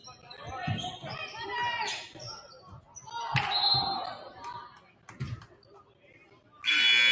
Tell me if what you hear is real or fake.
real